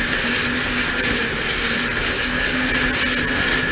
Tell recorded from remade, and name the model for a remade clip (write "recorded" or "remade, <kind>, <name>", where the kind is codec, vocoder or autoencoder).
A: recorded